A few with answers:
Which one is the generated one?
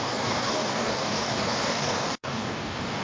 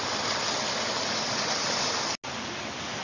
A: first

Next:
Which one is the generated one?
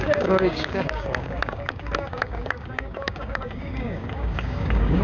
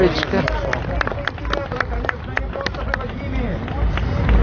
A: first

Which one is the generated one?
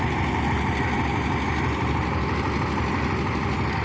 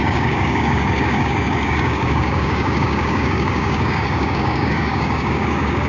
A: second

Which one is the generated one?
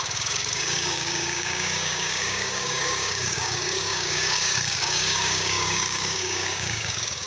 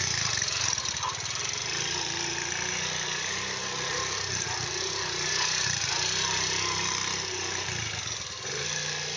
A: first